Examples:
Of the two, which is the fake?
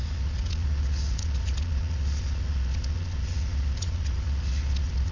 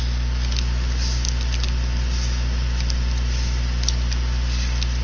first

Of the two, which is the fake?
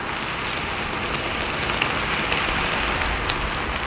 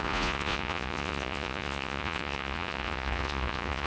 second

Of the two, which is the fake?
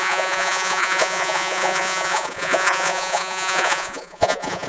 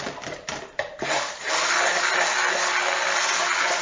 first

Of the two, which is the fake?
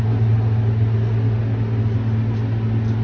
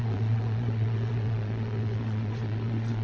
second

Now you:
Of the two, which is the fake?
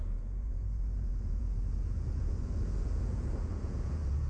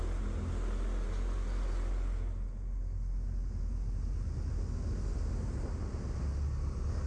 first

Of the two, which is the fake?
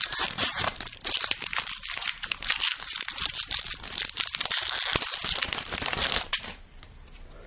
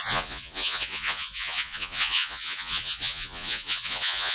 second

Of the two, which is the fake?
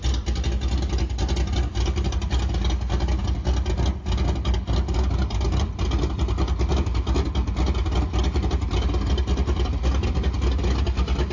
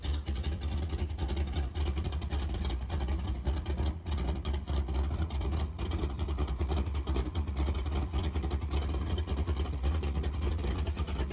second